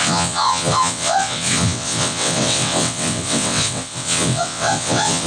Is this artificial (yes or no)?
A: yes